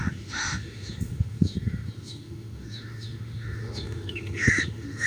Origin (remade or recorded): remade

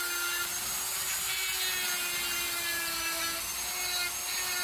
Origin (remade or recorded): recorded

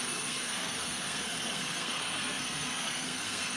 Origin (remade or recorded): remade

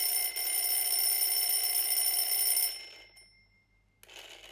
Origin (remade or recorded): recorded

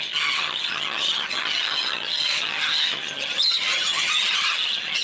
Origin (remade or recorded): remade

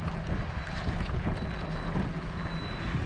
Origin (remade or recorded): recorded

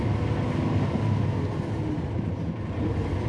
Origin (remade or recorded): recorded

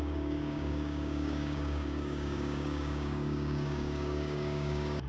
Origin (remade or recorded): remade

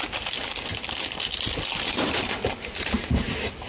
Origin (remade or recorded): recorded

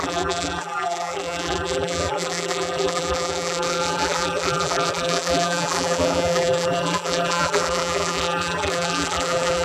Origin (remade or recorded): remade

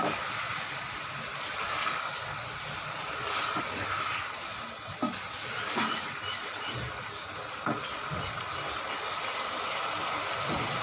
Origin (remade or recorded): recorded